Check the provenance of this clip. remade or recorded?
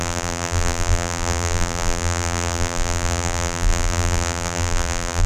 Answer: remade